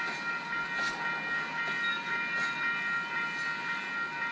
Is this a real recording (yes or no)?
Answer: yes